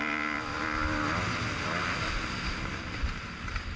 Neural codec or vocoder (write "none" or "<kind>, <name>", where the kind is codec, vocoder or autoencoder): none